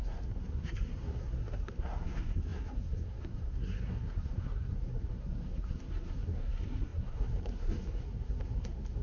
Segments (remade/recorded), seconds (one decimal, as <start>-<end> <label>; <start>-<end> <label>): 0.0-9.0 remade